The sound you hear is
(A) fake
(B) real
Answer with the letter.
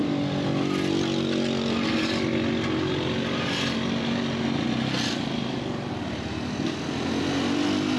B